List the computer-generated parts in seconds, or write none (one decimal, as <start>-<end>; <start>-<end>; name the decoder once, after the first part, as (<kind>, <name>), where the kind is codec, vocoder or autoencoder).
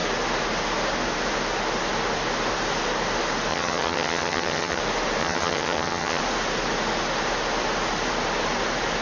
3.5-4.8 (vocoder, HiFi-GAN); 5.2-6.2